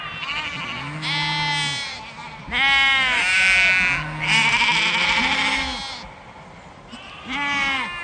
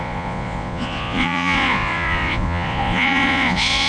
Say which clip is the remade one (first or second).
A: second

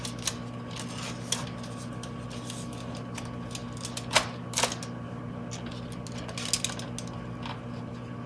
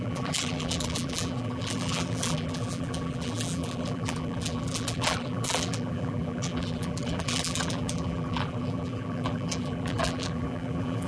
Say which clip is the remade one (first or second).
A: second